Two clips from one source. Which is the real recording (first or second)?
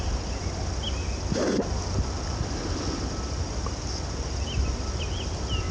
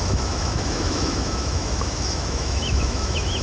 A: first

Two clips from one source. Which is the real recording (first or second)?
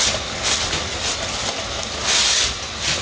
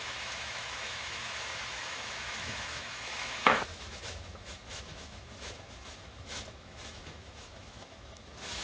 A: first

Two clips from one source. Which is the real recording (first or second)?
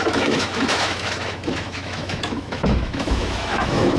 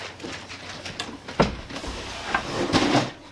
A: second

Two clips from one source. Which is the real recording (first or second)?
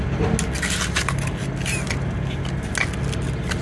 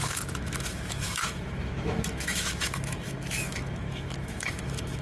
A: first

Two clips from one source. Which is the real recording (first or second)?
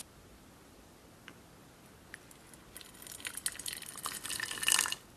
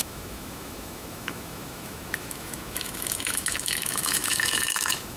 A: first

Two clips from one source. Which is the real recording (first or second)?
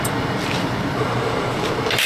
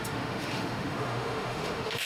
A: first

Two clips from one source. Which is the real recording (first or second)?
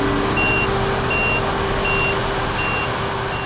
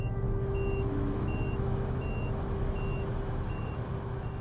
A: first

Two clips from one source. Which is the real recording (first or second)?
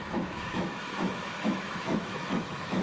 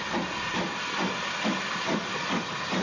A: second